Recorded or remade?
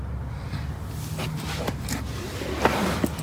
recorded